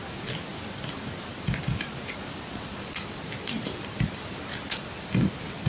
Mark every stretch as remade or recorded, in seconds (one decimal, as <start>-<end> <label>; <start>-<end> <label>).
0.0-5.7 recorded